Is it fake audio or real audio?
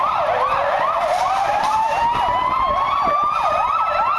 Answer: real